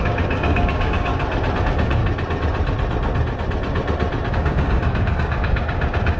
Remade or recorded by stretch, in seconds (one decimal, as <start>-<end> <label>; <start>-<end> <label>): 0.0-1.1 remade; 1.1-1.6 recorded; 1.6-2.0 remade; 2.0-4.3 recorded; 4.3-6.2 remade